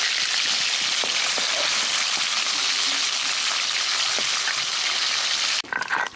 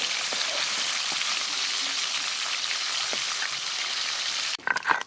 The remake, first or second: second